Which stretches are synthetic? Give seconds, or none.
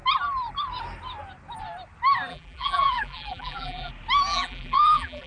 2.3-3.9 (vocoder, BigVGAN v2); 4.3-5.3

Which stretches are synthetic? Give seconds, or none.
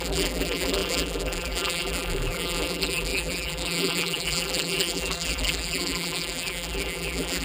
0.0-7.4 (vocoder, BigVGAN v2)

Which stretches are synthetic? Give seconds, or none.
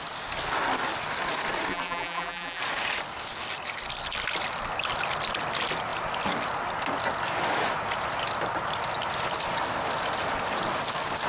1.7-2.6 (vocoder, BigVGAN v2)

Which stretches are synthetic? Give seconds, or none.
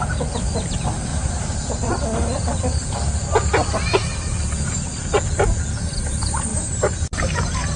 1.1-2.0 (vocoder, BigVGAN v2); 6.5-7.8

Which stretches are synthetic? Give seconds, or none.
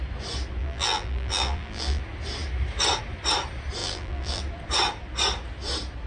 0.6-2.0 (vocoder, BigVGAN v2); 3.8-4.4